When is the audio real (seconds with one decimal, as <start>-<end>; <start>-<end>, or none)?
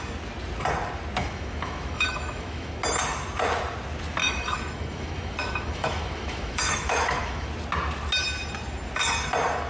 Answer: 0.0-1.2; 2.8-4.2; 7.5-9.7